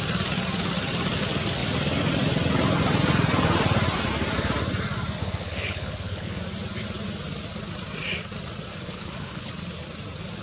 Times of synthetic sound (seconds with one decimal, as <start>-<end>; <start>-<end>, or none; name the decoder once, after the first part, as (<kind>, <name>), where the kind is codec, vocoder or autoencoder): 5.2-6.4 (codec, HILCodec); 8.7-9.5